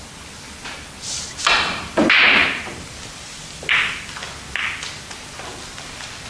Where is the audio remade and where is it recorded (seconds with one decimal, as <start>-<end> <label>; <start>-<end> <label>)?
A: 0.0-6.3 recorded